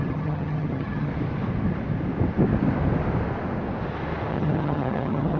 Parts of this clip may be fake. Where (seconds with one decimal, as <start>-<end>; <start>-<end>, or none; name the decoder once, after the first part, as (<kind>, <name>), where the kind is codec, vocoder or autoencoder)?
0.0-1.1 (vocoder, HiFi-GAN); 4.3-5.4